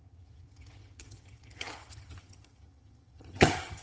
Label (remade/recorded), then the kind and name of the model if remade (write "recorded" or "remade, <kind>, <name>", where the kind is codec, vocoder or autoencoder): remade, vocoder, HiFi-GAN